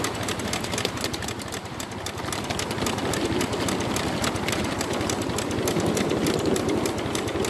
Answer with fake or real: real